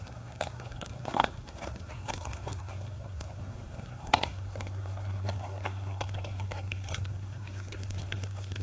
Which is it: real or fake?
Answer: fake